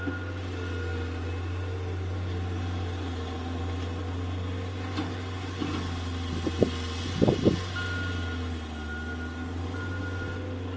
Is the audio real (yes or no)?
yes